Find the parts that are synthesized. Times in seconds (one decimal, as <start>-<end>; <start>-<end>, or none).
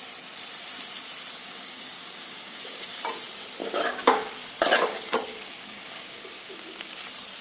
1.4-3.0; 3.6-4.3; 5.3-7.0